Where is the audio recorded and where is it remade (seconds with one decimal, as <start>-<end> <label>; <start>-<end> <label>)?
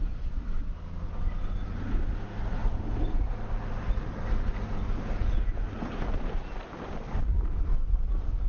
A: 0.0-8.5 recorded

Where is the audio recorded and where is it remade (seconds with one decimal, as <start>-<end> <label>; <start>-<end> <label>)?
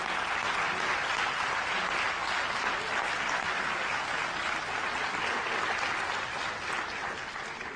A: 0.0-7.8 recorded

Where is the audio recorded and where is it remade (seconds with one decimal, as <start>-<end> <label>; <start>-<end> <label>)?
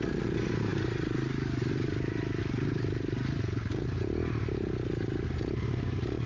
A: 0.0-6.3 recorded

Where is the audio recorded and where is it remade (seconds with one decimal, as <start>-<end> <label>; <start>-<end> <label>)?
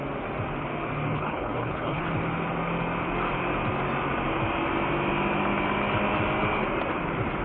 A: 0.0-1.1 recorded; 1.1-2.1 remade; 2.1-7.4 recorded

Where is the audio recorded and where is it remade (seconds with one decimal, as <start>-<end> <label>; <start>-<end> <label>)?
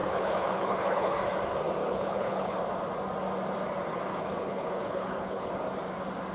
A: 0.0-1.2 remade; 1.2-1.8 recorded; 1.8-2.6 remade; 2.6-4.1 recorded; 4.1-5.5 remade; 5.5-6.3 recorded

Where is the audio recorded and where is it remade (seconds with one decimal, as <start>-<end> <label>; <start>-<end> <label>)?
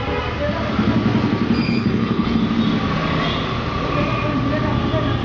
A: 0.0-1.6 recorded; 1.6-2.4 remade; 2.4-5.2 recorded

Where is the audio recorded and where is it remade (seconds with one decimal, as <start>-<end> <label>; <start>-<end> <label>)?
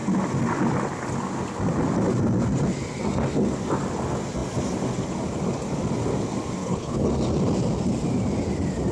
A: 0.0-6.6 recorded; 6.6-7.1 remade; 7.1-8.9 recorded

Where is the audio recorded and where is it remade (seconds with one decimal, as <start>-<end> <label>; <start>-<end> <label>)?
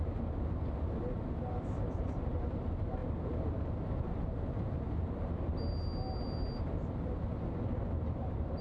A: 0.0-8.6 recorded